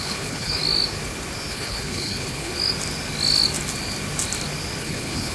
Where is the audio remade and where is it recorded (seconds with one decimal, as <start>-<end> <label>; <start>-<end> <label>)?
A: 0.0-0.6 remade; 0.6-1.5 recorded; 1.5-2.5 remade; 2.5-4.8 recorded; 4.8-5.3 remade